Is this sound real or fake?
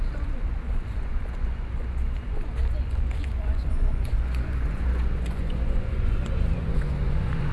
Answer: fake